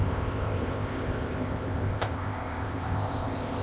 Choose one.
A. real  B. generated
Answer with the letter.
B